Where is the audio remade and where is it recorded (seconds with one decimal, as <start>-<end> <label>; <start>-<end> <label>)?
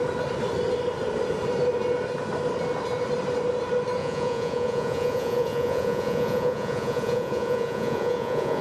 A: 0.0-4.0 recorded; 4.0-8.6 remade